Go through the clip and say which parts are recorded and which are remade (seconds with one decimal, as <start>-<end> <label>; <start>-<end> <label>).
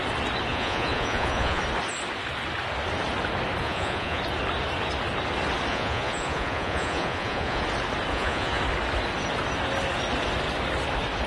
0.0-0.5 recorded; 0.5-1.6 remade; 1.6-3.6 recorded; 3.6-4.2 remade; 4.2-5.7 recorded; 5.7-7.6 remade; 7.6-8.1 recorded; 8.1-8.6 remade; 8.6-11.3 recorded